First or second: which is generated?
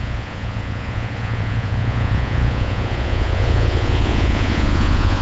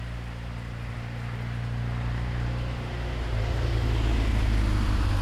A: first